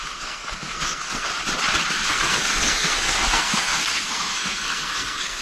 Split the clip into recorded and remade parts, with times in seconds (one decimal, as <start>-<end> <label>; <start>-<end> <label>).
0.0-1.3 remade; 1.3-2.1 recorded; 2.1-5.4 remade